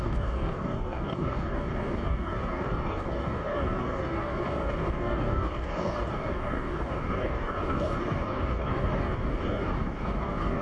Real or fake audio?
fake